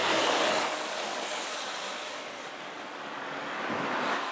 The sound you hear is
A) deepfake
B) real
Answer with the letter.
A